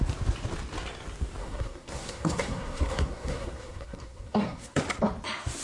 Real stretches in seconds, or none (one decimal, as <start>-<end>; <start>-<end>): 0.0-1.4; 4.8-5.6

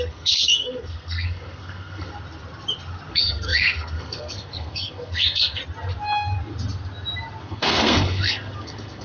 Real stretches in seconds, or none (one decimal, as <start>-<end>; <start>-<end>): 2.1-3.1; 5.6-7.4

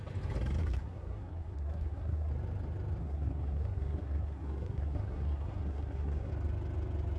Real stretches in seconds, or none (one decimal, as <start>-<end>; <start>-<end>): 0.0-0.6; 2.3-3.0; 6.3-7.2

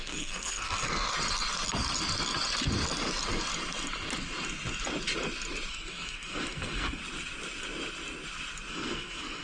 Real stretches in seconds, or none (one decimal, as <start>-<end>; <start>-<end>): 1.1-5.7; 7.0-8.7